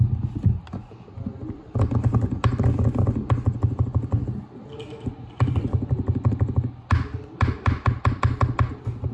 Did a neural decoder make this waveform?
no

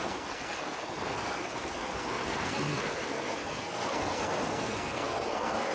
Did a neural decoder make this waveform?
yes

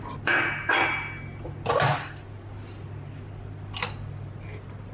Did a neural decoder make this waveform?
no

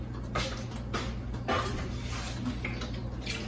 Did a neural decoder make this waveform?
no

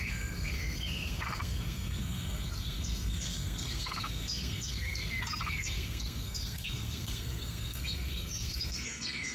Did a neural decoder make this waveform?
yes